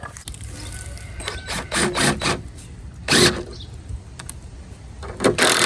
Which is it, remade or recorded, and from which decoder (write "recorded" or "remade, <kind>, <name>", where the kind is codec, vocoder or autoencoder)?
recorded